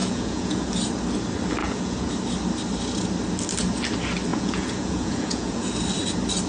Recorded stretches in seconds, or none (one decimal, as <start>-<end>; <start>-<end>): 0.7-1.6; 2.1-4.3; 5.7-6.5